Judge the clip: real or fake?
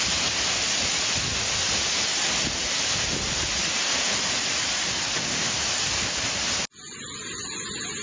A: real